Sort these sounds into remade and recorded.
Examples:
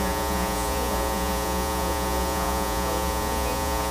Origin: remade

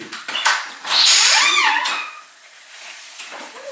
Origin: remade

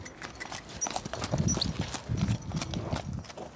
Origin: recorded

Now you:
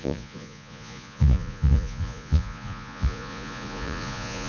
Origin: remade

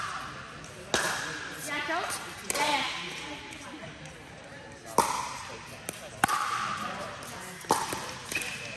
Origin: recorded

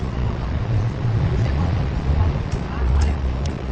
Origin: remade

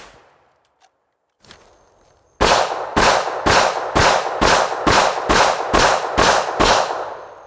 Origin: recorded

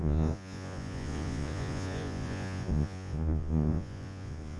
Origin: remade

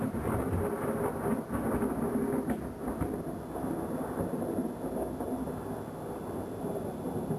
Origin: recorded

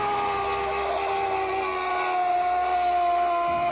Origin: recorded